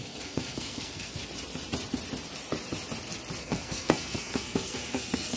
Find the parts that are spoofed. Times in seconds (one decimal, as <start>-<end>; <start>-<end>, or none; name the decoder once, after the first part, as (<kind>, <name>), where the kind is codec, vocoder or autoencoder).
0.0-1.2 (codec, SNAC); 3.4-5.4